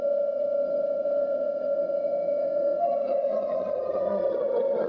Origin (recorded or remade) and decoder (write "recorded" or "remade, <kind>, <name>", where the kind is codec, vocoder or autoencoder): remade, vocoder, HiFi-GAN